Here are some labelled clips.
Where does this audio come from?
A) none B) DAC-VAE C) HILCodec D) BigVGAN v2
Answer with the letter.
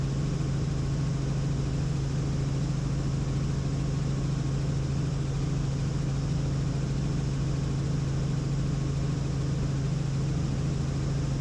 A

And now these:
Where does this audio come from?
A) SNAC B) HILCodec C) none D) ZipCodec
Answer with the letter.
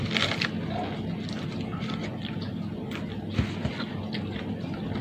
C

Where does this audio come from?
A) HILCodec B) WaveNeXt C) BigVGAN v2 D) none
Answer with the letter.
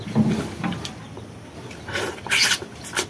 C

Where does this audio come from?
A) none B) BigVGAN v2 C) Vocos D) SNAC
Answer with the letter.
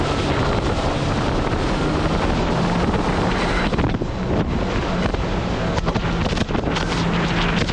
A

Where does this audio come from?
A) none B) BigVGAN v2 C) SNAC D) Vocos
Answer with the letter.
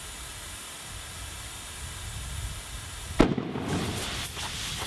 A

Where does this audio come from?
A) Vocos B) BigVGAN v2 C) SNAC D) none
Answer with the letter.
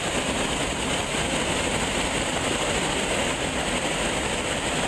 D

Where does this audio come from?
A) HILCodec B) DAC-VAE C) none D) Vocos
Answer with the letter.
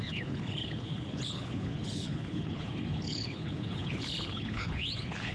A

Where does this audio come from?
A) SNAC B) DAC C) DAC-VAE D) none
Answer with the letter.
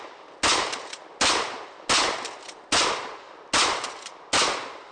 D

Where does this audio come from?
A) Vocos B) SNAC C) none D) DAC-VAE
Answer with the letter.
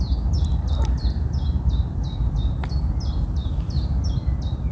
C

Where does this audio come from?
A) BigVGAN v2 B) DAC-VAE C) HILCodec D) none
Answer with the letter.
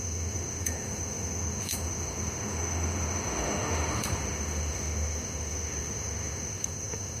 B